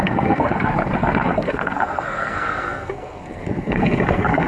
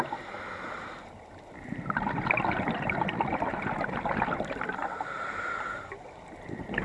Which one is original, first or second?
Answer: second